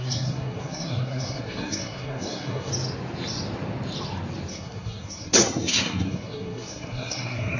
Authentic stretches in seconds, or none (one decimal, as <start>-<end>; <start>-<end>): 2.7-4.5